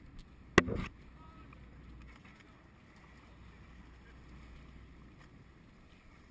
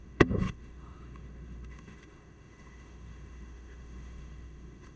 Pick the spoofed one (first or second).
second